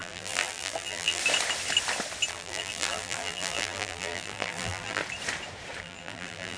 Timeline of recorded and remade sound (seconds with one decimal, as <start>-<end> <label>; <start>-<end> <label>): 0.0-1.2 remade; 1.2-2.3 recorded; 2.3-5.0 remade; 5.0-5.8 recorded; 5.8-6.6 remade